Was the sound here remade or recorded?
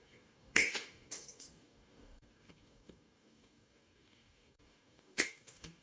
remade